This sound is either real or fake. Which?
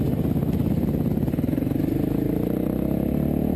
real